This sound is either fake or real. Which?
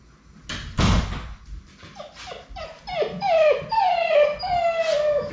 real